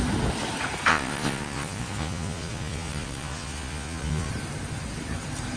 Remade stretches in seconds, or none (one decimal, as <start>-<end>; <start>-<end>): 0.9-4.3